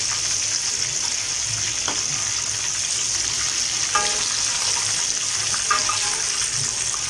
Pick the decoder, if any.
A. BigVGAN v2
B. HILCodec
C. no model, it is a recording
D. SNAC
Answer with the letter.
C